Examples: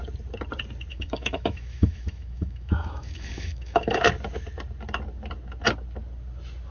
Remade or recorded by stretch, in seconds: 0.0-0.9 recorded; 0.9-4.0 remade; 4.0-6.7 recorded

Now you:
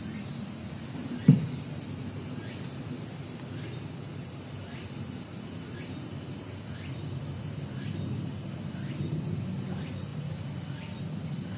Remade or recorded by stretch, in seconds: 0.0-11.6 recorded

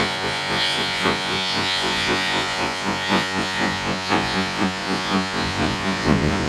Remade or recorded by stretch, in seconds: 0.0-6.5 remade

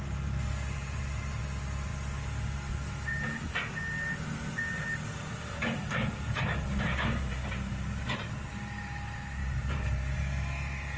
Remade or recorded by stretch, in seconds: 0.0-0.8 recorded; 0.8-1.4 remade; 1.4-5.2 recorded; 5.2-8.5 remade; 8.5-9.4 recorded; 9.4-10.2 remade; 10.2-11.0 recorded

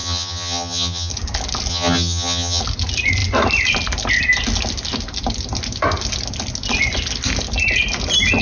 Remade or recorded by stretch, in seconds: 0.0-1.1 remade; 1.1-1.7 recorded; 1.7-2.6 remade; 2.6-8.4 recorded

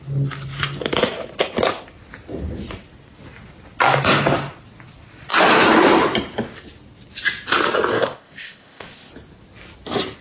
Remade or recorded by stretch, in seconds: 0.0-7.9 recorded; 7.9-9.1 remade; 9.1-10.2 recorded

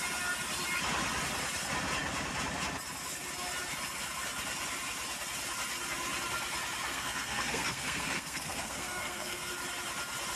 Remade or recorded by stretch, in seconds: 0.0-6.9 recorded; 6.9-9.5 remade; 9.5-10.4 recorded